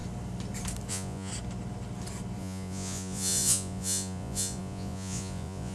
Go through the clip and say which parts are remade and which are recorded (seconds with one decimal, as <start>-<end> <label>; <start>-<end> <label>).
0.0-0.9 recorded; 0.9-1.3 remade; 1.3-2.4 recorded; 2.4-5.7 remade